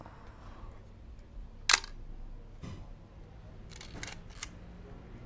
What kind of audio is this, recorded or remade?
recorded